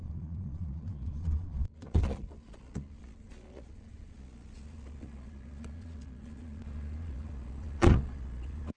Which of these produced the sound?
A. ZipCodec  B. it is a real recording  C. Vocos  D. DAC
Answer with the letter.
C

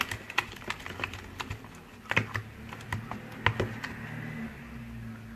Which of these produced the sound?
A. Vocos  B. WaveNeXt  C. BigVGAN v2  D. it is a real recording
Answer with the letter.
D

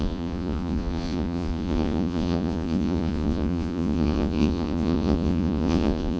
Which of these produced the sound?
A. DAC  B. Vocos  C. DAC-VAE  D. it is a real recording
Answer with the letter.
B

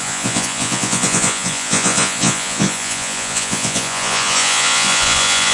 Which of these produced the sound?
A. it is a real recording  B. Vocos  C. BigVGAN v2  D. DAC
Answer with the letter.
B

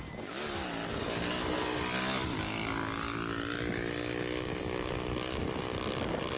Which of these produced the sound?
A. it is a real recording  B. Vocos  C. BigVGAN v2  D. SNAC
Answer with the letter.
A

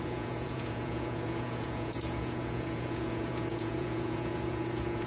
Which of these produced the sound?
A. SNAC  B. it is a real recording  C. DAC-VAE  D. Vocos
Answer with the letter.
D